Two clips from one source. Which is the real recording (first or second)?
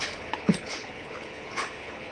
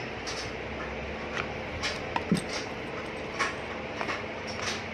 second